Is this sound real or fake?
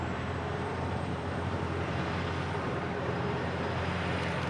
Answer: fake